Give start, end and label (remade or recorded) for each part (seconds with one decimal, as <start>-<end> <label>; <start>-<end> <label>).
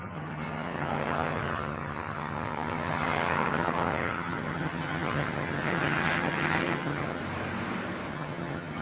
0.0-7.2 remade; 7.2-8.1 recorded; 8.1-8.8 remade